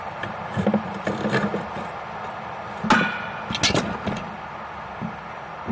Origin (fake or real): real